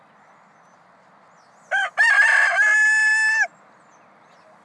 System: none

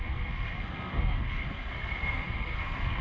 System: codec, SNAC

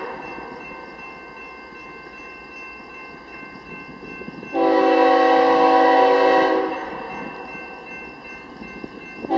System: none